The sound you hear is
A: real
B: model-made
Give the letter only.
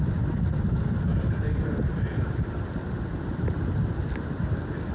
A